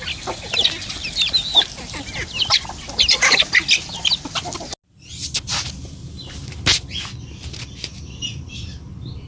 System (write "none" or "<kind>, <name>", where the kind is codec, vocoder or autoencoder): none